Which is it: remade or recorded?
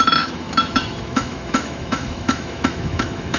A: remade